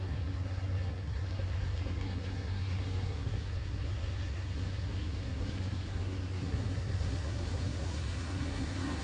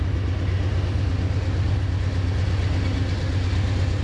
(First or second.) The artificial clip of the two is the first